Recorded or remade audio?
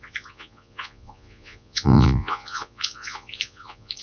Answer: remade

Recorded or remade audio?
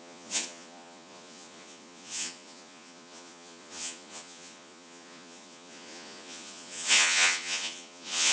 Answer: remade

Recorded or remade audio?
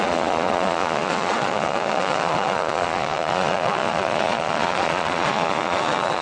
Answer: remade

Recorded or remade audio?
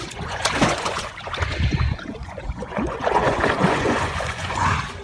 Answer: remade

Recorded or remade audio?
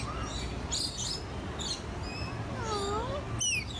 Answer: recorded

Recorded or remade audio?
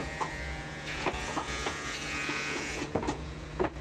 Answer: remade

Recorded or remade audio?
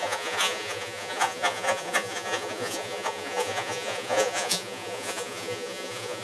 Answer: remade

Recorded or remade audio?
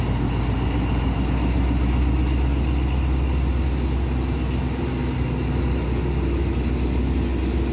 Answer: recorded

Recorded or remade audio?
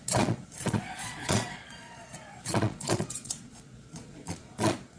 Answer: remade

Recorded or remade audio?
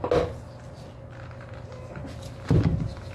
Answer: recorded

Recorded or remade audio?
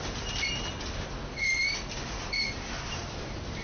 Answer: recorded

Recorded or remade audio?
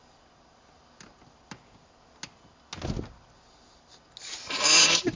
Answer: recorded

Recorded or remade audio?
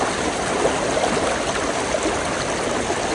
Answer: recorded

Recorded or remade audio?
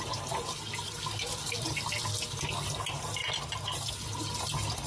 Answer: recorded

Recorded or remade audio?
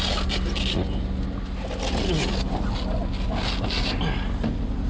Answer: recorded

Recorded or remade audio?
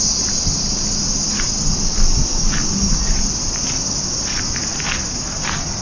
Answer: recorded